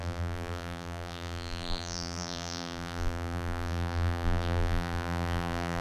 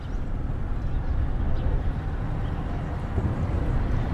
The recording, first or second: second